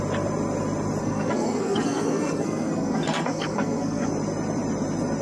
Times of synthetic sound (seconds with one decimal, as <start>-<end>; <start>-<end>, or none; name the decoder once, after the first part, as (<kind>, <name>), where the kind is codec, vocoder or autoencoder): 1.0-4.1 (codec, SNAC)